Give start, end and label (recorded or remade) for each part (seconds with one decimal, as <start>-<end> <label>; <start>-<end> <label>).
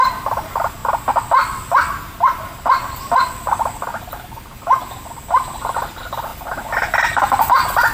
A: 0.0-0.8 remade; 0.8-3.3 recorded; 3.3-7.9 remade